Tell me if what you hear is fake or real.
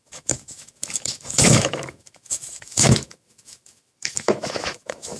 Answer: fake